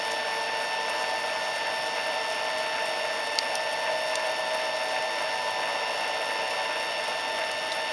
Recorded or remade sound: recorded